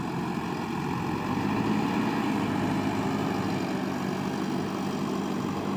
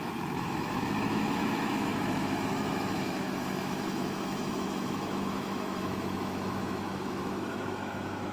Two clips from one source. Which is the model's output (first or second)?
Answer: second